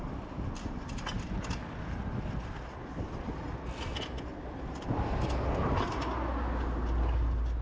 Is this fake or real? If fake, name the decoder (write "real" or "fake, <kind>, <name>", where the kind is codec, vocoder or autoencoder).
real